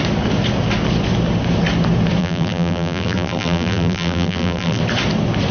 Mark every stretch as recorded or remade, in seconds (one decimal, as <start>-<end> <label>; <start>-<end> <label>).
0.0-2.2 recorded; 2.2-4.8 remade; 4.8-5.5 recorded